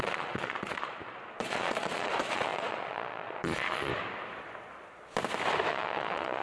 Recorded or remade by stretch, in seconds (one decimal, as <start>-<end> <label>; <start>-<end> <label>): 0.0-3.9 remade; 3.9-5.7 recorded; 5.7-6.4 remade